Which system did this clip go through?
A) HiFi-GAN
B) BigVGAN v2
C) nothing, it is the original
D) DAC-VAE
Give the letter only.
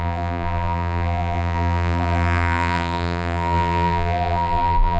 B